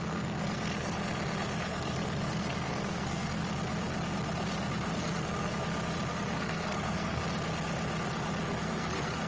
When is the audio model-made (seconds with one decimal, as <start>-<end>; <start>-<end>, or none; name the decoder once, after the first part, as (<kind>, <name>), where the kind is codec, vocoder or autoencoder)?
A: 0.0-3.4 (codec, SNAC); 5.0-5.5; 6.1-7.2; 8.6-9.3